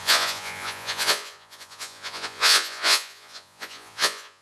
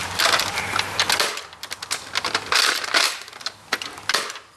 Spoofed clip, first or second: first